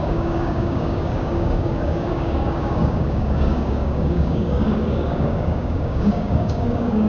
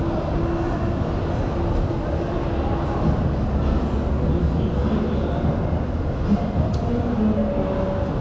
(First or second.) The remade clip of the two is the first